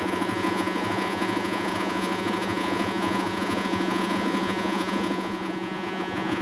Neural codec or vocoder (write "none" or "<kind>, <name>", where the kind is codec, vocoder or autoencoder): vocoder, Vocos